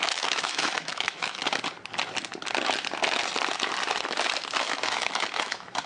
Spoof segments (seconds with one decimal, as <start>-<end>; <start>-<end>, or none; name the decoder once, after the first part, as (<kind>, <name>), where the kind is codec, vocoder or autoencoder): 0.0-1.4 (autoencoder, DAC-VAE); 4.6-5.9